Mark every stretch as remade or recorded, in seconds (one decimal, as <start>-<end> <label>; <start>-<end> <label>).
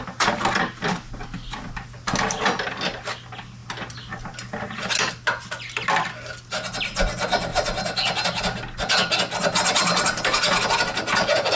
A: 0.0-11.6 recorded